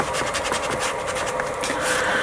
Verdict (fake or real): real